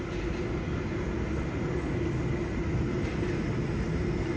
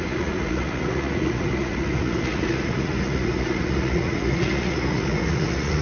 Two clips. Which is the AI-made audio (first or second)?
second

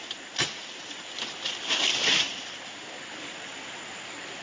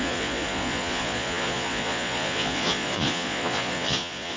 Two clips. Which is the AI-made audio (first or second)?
second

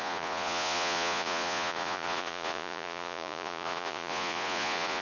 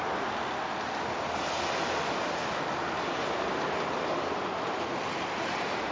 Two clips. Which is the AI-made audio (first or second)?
first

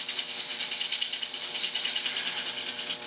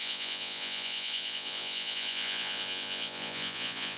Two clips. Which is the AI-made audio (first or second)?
second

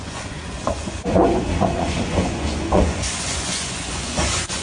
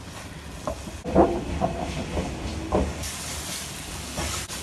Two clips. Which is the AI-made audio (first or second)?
first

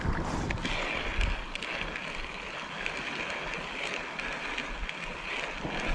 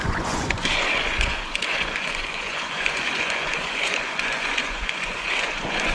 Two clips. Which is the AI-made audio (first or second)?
second